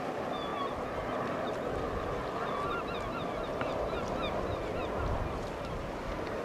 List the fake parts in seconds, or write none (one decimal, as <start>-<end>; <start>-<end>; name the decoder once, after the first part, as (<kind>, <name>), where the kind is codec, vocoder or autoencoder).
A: none

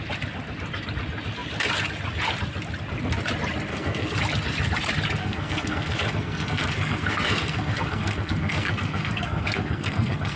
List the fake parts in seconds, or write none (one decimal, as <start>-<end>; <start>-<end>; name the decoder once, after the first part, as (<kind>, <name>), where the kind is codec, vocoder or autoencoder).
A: 3.7-4.2 (codec, SNAC); 5.2-10.4